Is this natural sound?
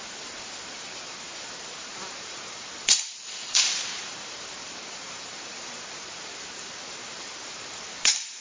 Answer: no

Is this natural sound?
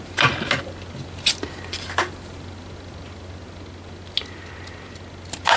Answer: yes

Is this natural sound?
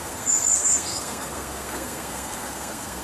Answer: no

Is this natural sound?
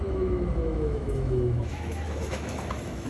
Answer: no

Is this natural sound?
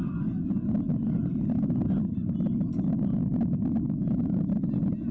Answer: yes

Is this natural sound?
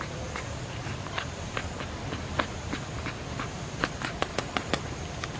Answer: yes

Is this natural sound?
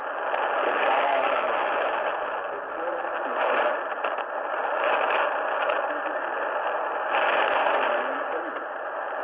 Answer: yes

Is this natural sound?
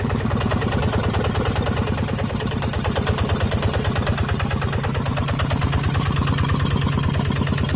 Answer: yes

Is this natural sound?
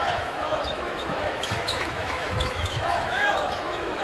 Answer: no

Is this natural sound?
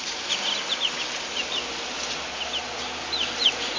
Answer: yes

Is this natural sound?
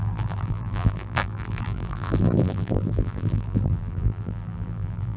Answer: no